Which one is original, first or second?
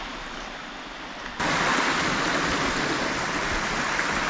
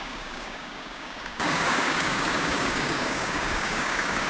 first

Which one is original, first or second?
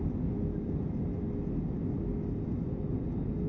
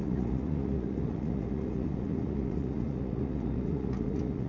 first